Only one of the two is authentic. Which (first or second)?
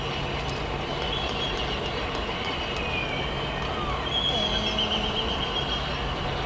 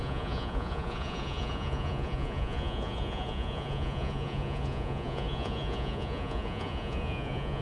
first